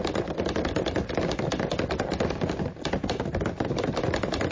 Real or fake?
real